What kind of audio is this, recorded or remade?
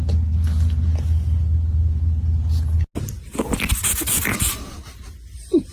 recorded